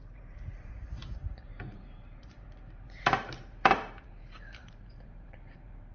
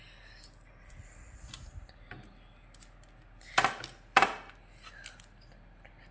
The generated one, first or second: first